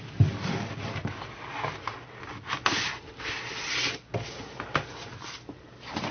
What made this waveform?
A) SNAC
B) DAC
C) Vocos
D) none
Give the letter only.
D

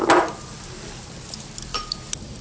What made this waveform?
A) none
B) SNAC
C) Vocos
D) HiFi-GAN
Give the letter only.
A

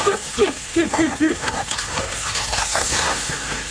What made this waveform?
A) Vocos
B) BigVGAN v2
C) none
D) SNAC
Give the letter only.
D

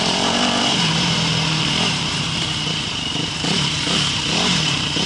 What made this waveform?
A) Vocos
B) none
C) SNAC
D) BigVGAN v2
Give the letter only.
D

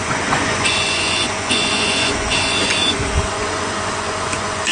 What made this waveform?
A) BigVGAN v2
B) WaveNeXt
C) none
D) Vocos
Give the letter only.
D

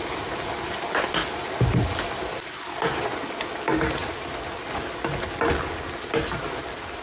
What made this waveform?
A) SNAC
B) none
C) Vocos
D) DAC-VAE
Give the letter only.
B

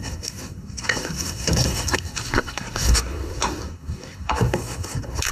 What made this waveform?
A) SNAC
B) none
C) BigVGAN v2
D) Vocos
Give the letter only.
A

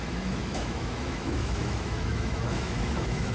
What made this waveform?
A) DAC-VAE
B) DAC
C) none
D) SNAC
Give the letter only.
A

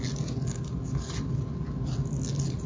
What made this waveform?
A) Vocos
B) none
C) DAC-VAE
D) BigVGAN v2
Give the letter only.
B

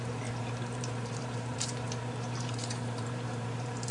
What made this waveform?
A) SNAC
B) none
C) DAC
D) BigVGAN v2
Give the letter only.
D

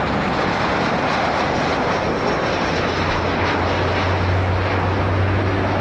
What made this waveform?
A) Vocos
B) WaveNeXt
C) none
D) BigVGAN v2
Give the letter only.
C